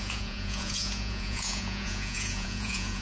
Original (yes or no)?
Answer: no